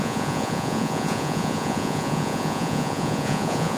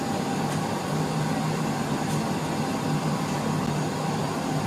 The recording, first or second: second